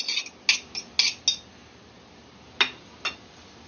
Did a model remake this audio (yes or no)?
no